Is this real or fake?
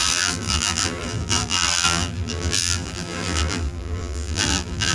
fake